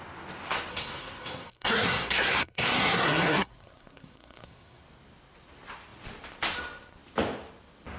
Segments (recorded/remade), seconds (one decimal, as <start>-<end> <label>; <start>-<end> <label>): 0.0-0.7 recorded; 0.7-4.8 remade; 4.8-8.0 recorded